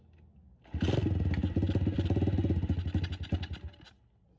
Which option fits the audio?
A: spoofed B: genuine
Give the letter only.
B